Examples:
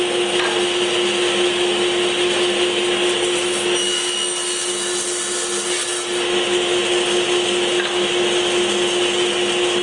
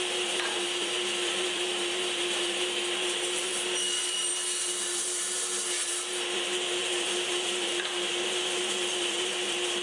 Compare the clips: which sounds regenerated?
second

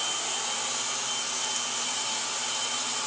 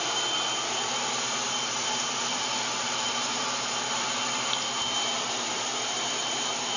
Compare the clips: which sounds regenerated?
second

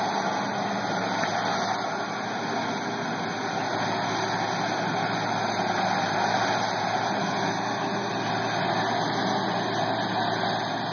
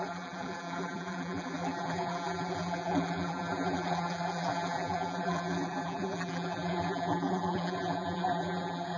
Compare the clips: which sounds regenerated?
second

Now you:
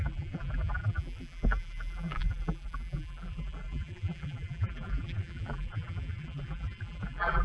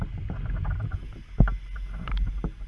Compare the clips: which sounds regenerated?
first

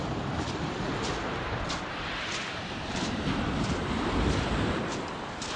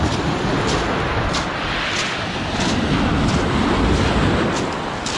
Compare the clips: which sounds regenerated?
first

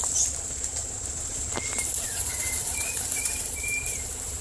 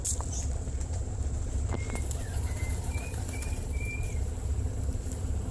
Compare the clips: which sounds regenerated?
first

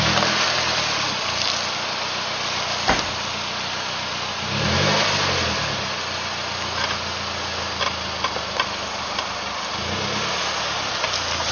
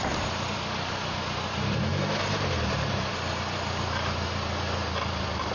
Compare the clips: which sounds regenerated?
second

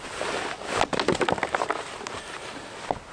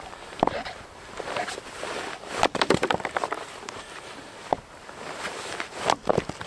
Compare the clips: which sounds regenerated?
second